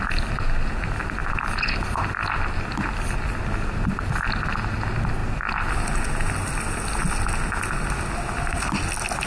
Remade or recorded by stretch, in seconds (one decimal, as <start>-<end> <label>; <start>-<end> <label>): 0.0-9.3 recorded